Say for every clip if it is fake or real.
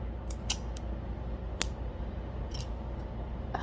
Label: real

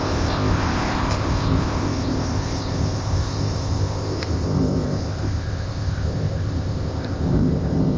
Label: fake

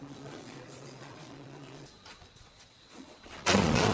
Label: fake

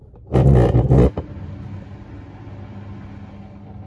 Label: real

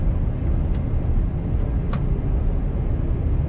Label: real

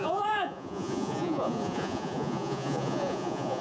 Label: fake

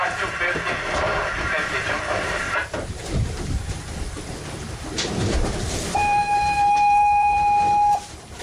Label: fake